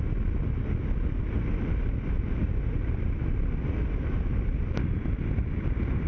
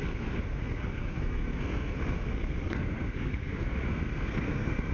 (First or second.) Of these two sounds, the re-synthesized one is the second